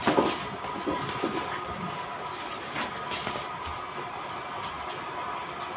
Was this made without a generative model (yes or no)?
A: yes